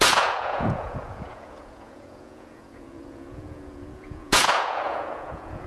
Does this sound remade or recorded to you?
remade